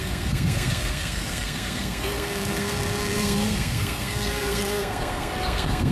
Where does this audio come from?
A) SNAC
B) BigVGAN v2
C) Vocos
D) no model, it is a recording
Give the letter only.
A